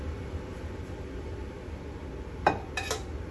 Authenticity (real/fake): real